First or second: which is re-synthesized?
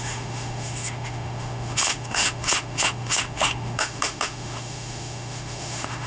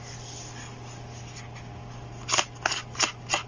first